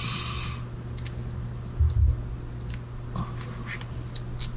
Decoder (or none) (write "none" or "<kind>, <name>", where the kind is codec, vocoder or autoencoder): none